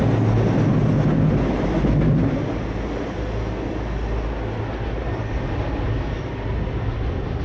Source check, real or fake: real